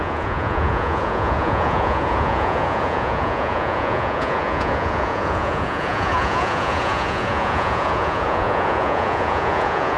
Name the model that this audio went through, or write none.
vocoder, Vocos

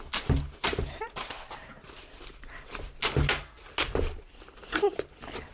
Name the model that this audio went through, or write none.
none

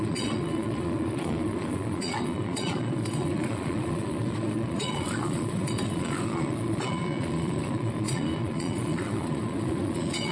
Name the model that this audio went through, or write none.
vocoder, Vocos